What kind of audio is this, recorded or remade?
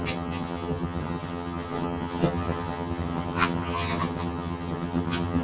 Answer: remade